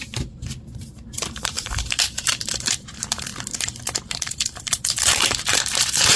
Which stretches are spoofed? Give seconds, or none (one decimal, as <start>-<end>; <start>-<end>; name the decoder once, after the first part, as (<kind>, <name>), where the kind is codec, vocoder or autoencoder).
0.0-3.3 (vocoder, BigVGAN v2); 4.2-6.2